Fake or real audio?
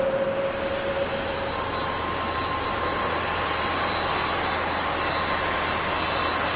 real